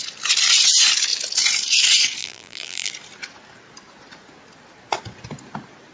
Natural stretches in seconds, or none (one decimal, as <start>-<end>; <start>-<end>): 0.0-2.2; 2.9-5.9

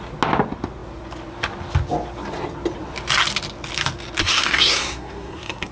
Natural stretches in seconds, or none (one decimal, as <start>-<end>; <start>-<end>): 0.0-4.2

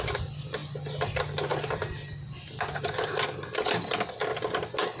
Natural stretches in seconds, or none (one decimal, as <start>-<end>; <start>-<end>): 0.0-5.0

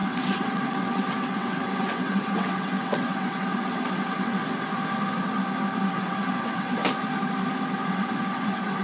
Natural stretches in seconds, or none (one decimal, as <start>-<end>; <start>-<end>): 4.4-5.9; 6.8-7.9

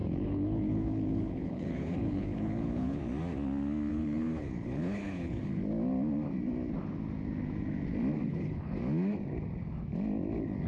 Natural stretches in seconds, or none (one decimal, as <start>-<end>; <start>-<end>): 3.0-3.9; 5.5-8.3; 8.8-10.7

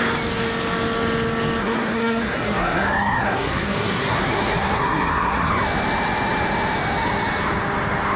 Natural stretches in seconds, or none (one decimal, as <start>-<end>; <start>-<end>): 0.0-1.6; 5.5-8.2

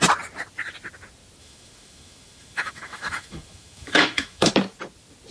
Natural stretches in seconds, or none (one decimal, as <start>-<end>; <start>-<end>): 0.0-1.4; 4.5-5.3

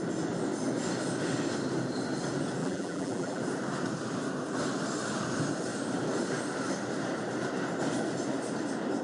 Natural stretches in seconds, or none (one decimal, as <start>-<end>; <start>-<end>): 0.0-2.6; 3.4-9.0